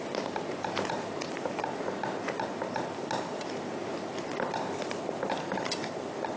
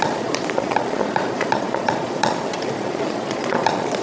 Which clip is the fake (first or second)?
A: second